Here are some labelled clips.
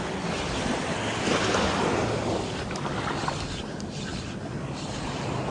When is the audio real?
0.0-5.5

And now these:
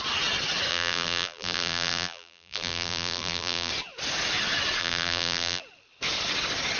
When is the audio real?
0.0-0.7; 3.7-4.8; 5.6-6.8

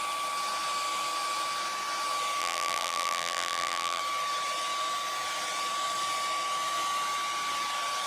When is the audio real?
0.0-2.4; 4.0-8.1

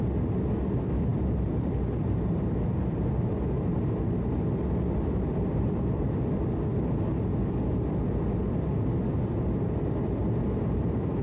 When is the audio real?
0.0-5.5; 6.4-11.2